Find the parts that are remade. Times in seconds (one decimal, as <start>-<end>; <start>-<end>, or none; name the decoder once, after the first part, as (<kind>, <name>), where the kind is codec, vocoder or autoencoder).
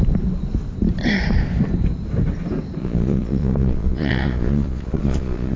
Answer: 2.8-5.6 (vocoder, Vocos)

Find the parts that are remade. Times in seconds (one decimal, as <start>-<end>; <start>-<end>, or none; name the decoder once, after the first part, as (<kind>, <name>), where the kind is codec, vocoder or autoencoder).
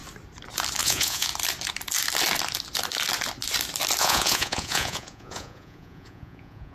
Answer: 0.8-1.3 (vocoder, Vocos); 4.0-6.7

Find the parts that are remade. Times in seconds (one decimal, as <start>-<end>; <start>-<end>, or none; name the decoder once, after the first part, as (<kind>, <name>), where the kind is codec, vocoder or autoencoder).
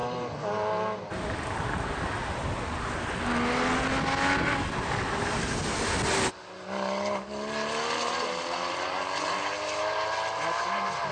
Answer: none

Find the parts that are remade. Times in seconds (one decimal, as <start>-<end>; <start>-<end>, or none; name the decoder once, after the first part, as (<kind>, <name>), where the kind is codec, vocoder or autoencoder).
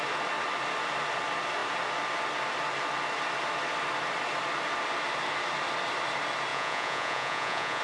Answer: 6.5-7.8 (vocoder, Vocos)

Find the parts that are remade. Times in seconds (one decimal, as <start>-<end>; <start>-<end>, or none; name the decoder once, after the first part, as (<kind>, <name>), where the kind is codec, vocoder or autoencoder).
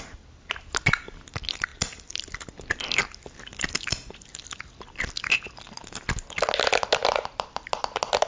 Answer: none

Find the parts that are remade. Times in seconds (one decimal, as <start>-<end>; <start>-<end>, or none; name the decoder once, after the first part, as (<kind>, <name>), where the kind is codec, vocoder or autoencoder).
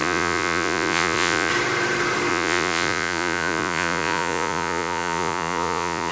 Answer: 0.0-1.5 (vocoder, Vocos); 2.3-6.1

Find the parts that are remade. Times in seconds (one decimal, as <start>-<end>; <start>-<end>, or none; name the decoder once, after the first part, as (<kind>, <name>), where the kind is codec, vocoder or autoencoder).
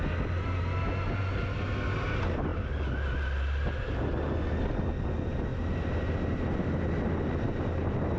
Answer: none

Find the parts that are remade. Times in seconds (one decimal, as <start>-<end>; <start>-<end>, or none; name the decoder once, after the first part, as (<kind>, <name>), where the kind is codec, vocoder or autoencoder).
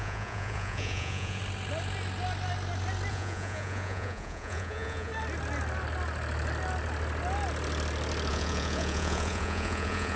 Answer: 0.0-1.4 (vocoder, Vocos); 3.1-5.1; 8.3-10.2